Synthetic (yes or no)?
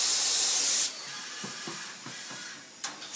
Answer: no